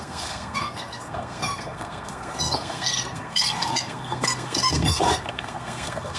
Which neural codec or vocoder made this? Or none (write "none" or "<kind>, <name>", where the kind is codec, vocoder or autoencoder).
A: codec, SNAC